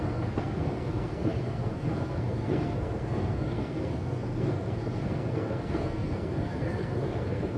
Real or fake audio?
fake